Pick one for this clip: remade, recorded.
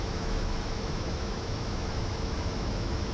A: remade